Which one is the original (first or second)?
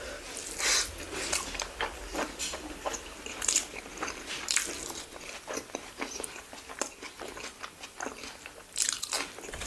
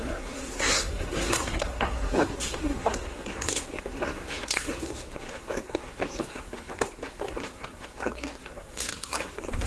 first